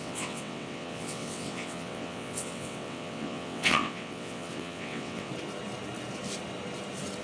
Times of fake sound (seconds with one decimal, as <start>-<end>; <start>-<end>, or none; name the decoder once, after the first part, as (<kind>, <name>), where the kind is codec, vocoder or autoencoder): 0.0-5.3 (vocoder, WaveNeXt)

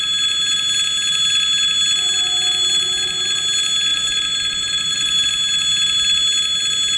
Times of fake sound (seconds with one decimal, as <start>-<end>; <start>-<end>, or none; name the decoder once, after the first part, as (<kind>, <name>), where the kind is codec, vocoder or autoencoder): 3.9-5.3 (vocoder, BigVGAN v2)

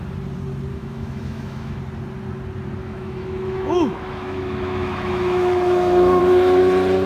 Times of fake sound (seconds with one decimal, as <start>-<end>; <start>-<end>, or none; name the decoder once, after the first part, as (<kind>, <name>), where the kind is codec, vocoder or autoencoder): 0.7-1.8 (autoencoder, DAC-VAE); 2.8-6.2

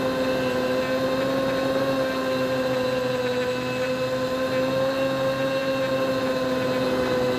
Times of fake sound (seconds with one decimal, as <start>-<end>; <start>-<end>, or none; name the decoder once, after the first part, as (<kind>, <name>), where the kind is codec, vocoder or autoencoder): none

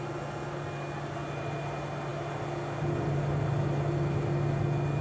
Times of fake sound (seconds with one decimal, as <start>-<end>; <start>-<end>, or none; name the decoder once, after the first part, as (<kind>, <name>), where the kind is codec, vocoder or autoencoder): none

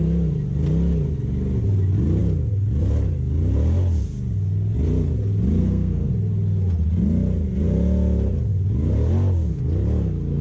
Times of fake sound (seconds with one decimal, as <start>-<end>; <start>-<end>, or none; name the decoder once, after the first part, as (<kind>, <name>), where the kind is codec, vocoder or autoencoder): 5.6-6.1 (codec, SNAC)